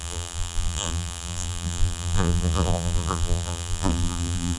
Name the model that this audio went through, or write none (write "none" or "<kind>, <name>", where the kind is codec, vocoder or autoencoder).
vocoder, BigVGAN v2